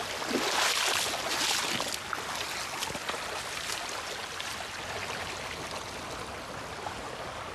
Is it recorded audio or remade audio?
recorded